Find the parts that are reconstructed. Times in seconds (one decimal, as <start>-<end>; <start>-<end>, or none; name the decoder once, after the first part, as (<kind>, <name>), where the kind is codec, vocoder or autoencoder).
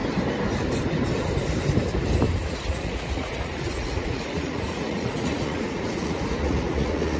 2.7-7.2 (vocoder, Vocos)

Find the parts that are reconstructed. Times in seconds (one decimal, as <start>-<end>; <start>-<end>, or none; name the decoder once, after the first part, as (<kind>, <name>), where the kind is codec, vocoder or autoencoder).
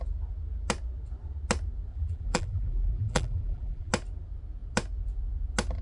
1.9-3.9 (vocoder, BigVGAN v2)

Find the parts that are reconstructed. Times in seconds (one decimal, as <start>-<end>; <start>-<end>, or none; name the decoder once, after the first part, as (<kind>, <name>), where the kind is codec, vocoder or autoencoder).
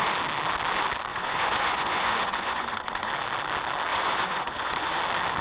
1.1-3.1 (vocoder, Vocos); 3.9-5.0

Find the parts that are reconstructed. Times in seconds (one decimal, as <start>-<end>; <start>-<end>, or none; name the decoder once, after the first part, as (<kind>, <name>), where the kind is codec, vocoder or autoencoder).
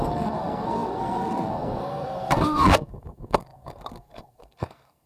0.0-5.1 (codec, SNAC)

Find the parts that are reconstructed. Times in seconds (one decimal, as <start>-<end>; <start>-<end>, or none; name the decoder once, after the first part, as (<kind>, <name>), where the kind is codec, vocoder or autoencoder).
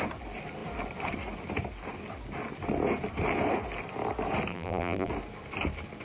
4.5-5.1 (vocoder, BigVGAN v2)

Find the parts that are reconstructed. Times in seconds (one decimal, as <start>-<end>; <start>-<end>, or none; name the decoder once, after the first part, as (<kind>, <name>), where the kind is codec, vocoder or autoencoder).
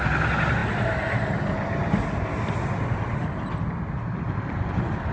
none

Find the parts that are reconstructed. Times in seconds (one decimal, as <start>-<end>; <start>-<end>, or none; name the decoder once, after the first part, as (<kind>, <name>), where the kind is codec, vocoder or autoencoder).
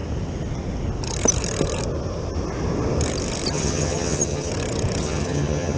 3.5-4.5 (vocoder, HiFi-GAN); 5.0-5.8